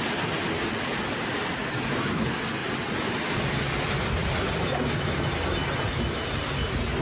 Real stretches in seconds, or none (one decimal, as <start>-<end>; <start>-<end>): 0.0-7.0